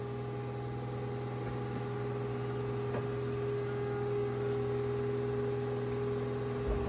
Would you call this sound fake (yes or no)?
no